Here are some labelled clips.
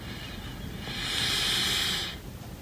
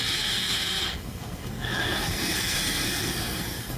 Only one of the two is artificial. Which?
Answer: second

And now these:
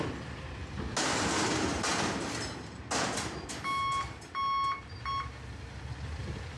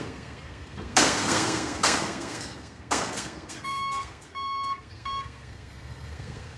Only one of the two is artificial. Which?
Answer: second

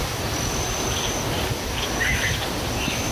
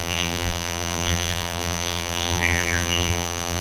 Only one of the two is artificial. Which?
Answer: second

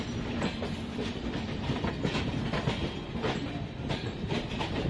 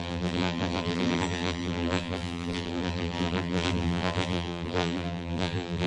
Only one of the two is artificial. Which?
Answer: second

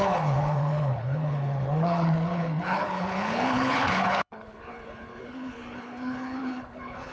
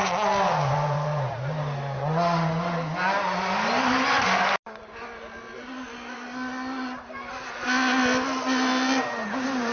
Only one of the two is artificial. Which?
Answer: first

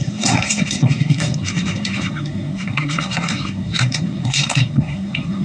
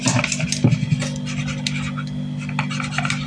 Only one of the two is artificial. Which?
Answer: first